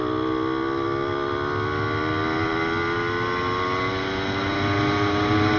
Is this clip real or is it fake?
real